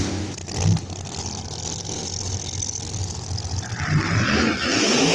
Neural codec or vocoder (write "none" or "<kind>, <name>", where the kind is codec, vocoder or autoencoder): none